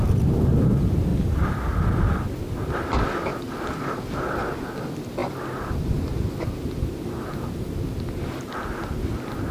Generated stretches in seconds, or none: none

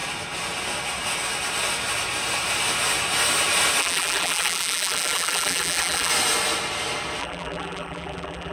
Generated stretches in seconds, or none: 3.8-6.1 (vocoder, BigVGAN v2); 7.2-8.5